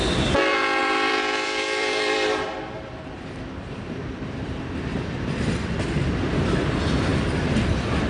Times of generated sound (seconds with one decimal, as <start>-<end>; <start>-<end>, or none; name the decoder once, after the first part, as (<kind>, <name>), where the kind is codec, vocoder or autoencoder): 0.8-5.7 (vocoder, BigVGAN v2); 7.1-8.1

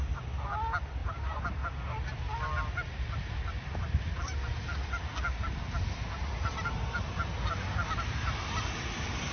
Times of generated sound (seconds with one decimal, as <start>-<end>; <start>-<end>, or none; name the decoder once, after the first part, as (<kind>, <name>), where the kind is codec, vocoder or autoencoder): 1.0-1.6 (vocoder, BigVGAN v2)

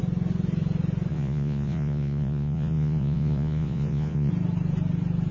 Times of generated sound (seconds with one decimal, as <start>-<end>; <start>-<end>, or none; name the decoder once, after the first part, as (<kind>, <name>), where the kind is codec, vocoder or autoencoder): 1.1-4.3 (vocoder, Vocos)

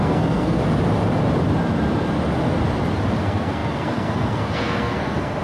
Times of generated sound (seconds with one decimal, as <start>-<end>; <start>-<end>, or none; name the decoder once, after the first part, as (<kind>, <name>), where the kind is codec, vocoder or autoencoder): 0.0-0.6 (codec, SNAC); 3.2-5.4

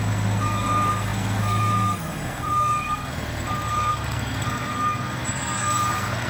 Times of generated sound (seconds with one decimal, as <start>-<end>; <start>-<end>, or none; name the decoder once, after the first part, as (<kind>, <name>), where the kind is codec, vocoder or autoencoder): 0.0-6.3 (codec, SNAC)

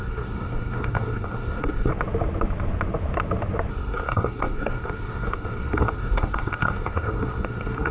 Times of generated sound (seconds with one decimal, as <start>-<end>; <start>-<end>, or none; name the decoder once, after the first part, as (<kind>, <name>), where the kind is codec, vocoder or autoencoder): 0.0-1.9 (codec, SNAC); 3.7-7.9